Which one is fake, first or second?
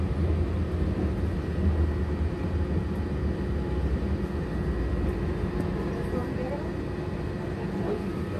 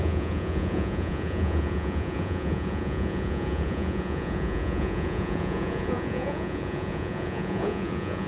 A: second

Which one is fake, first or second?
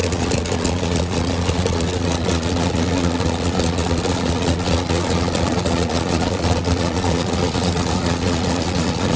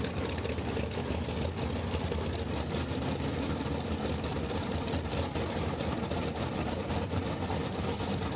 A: first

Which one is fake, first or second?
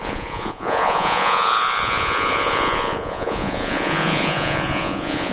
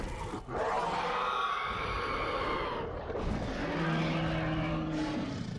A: first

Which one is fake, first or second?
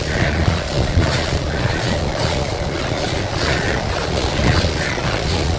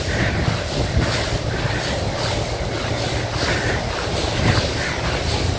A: first